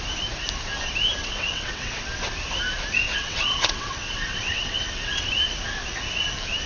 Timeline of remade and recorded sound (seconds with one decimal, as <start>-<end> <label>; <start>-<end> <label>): 0.0-1.2 recorded; 1.2-2.1 remade; 2.1-3.1 recorded; 3.1-5.3 remade; 5.3-6.7 recorded